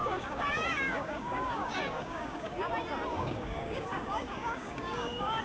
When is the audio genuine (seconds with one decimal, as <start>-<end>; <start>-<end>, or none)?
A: 2.7-3.1